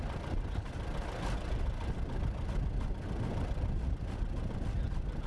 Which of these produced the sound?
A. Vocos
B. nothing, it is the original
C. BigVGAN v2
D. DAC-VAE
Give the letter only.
B